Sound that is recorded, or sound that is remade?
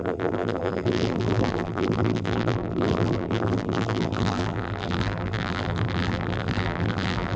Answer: remade